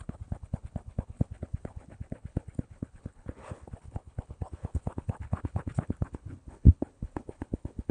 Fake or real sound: fake